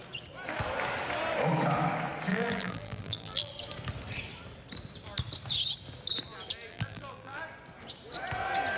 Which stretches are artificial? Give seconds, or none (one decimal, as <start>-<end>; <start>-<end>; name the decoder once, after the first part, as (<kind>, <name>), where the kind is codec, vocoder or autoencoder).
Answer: 2.3-3.5 (vocoder, BigVGAN v2); 6.7-7.4